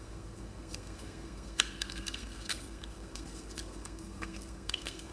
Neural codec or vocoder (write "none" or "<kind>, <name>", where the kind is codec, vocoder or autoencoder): codec, SNAC